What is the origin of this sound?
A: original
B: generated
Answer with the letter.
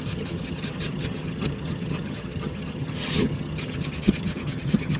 B